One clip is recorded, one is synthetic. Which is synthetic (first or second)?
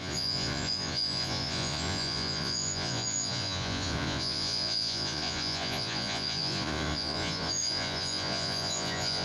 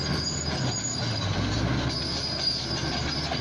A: first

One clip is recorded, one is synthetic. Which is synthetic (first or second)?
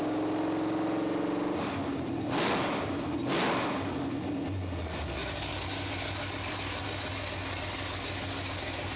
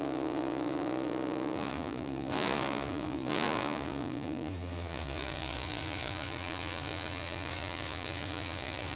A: second